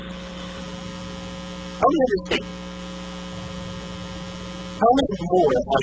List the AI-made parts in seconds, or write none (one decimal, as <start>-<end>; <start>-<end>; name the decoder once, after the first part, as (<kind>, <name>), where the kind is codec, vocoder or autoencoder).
0.0-0.6 (codec, HILCodec)